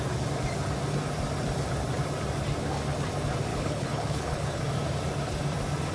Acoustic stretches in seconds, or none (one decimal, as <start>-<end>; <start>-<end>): 0.0-3.5; 4.6-5.9